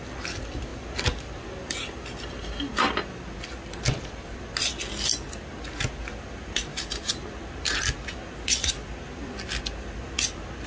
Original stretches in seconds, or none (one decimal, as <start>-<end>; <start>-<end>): 0.0-10.7